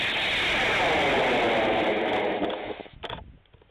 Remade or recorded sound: recorded